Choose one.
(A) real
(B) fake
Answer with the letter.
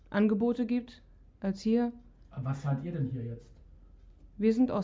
A